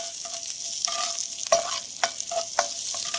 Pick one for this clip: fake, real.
real